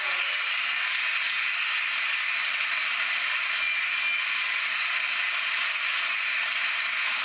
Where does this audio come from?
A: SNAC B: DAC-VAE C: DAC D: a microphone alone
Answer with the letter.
D